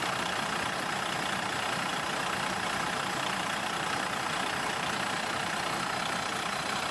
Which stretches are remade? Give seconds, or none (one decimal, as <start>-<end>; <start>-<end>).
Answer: none